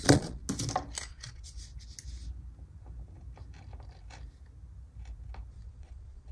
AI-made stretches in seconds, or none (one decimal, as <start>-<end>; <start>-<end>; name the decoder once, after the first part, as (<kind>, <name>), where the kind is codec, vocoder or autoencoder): 0.0-0.4 (vocoder, Vocos); 1.1-1.7; 5.5-6.3